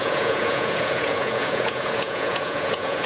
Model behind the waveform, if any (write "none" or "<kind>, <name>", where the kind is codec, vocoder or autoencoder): vocoder, Vocos